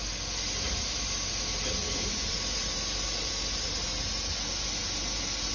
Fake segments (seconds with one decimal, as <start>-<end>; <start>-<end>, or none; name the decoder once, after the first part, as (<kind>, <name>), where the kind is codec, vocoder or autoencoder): 1.8-2.3 (vocoder, BigVGAN v2)